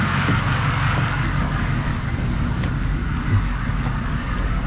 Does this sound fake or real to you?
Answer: fake